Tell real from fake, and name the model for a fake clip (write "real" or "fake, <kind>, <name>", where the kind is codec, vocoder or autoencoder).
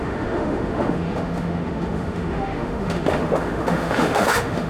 fake, autoencoder, DAC-VAE